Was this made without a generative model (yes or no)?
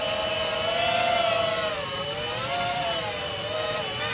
yes